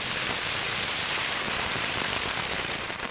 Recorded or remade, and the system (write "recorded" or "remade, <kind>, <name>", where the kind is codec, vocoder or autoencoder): recorded